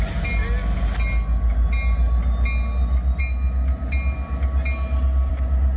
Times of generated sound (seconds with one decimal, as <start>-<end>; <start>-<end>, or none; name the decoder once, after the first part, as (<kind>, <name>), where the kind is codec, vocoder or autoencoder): none